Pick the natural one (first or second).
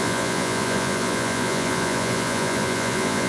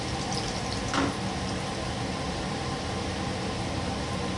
second